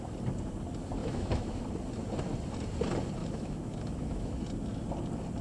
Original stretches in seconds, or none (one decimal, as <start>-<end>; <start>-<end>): 0.0-1.0; 1.6-3.2; 4.4-5.4